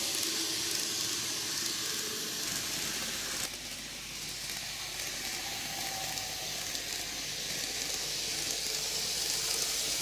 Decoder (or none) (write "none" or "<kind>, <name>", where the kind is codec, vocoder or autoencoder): none